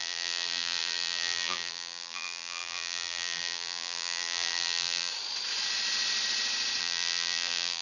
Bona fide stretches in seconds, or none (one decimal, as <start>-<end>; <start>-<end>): 5.1-6.8